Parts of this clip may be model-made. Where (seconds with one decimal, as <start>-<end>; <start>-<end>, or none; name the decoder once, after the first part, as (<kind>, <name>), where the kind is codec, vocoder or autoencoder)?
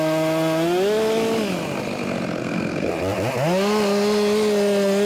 2.4-2.9 (codec, SNAC)